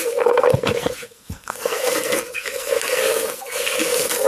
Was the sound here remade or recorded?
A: remade